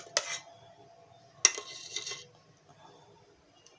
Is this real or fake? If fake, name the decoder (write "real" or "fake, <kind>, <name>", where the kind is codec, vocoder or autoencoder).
real